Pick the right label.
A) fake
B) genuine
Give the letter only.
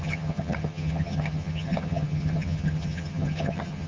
A